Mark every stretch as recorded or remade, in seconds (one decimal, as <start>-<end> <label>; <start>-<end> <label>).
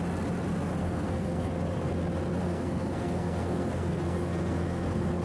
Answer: 0.0-0.8 recorded; 0.8-1.9 remade; 1.9-2.4 recorded; 2.4-5.2 remade